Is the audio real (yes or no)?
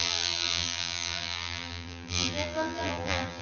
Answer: no